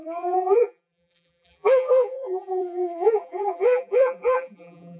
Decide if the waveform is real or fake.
fake